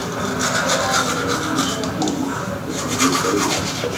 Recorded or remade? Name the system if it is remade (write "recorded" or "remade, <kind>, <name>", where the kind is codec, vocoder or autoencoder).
recorded